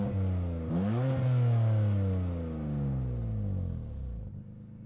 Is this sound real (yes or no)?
yes